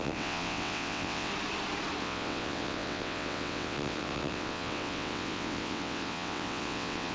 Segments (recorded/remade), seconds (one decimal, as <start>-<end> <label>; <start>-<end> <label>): 0.0-1.3 remade; 1.3-2.0 recorded; 2.0-7.1 remade